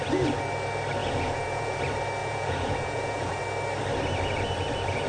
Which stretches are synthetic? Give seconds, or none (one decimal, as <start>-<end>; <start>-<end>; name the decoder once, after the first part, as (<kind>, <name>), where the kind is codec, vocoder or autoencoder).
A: 1.0-1.8 (vocoder, Vocos); 2.2-3.4